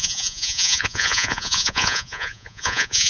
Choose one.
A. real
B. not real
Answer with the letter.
B